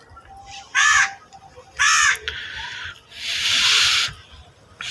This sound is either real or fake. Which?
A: real